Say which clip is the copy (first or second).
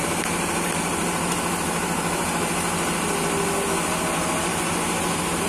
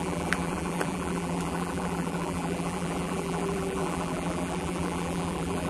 second